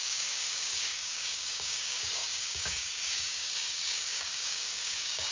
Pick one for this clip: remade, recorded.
remade